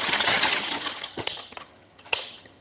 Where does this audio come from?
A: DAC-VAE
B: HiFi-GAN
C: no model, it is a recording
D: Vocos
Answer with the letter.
B